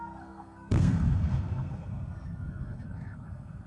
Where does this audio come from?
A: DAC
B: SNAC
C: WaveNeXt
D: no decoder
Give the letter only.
B